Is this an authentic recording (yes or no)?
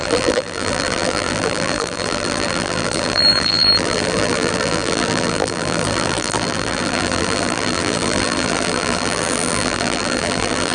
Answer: no